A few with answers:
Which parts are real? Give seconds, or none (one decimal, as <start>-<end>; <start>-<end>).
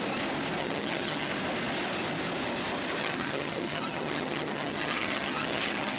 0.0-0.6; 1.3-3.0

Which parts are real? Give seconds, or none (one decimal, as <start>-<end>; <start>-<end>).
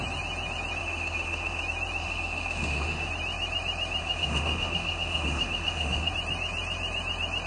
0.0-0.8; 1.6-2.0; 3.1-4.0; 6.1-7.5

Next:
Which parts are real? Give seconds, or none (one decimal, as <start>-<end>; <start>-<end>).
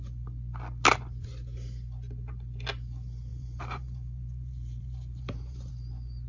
0.0-3.3; 5.7-6.3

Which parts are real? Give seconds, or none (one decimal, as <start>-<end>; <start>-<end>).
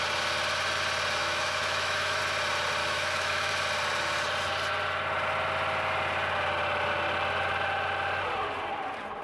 0.0-1.2; 2.2-2.8; 3.5-9.2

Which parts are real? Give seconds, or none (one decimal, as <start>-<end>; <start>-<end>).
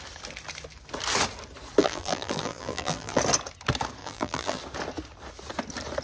0.0-1.8; 3.2-4.0; 4.6-6.0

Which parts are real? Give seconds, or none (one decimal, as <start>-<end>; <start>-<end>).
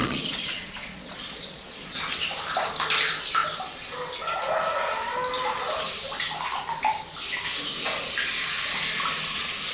2.0-9.7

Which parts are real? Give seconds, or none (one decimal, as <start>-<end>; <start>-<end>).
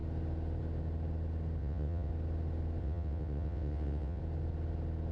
0.0-1.6; 2.1-2.8; 4.2-5.1